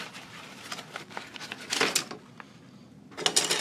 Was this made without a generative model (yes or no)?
yes